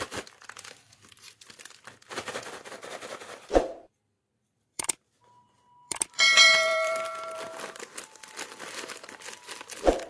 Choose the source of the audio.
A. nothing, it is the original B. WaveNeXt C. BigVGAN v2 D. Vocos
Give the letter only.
C